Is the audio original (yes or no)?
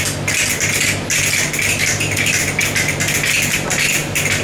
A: yes